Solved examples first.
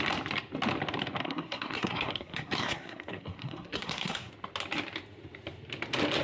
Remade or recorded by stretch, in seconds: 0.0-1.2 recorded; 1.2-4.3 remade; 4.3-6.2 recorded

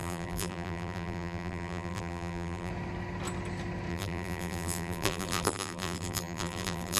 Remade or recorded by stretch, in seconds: 0.0-2.7 remade; 2.7-3.9 recorded; 3.9-7.0 remade

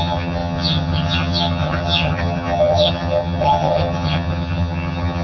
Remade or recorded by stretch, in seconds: 0.0-5.2 remade